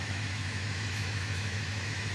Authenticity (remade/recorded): remade